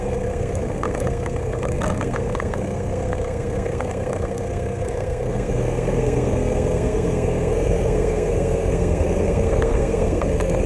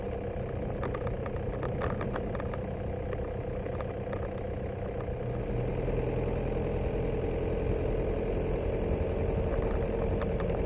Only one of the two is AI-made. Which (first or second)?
first